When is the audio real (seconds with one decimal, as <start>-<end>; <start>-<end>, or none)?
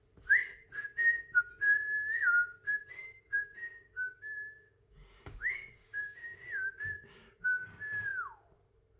0.0-3.0; 7.7-9.0